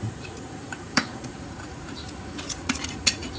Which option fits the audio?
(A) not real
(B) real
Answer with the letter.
A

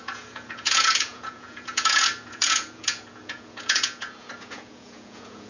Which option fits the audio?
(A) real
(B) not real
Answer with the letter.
B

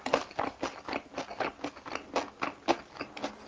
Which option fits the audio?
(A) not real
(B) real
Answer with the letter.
B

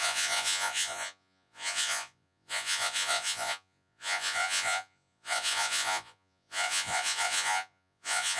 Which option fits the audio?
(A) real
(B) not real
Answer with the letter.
B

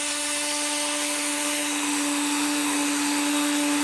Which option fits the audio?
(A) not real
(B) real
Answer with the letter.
A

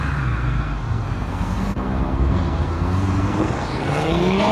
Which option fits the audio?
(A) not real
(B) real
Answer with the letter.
A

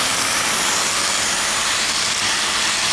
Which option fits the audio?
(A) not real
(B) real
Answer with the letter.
B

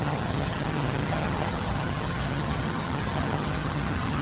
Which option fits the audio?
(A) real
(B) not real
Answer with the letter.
B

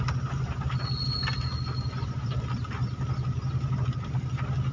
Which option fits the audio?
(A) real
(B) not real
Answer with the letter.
A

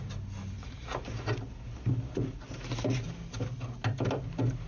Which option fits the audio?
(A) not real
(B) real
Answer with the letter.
B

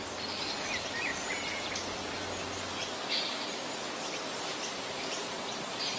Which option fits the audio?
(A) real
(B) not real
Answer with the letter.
A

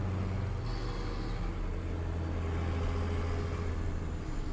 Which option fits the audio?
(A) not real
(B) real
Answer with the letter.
B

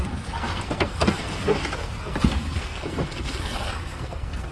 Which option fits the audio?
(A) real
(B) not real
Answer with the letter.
B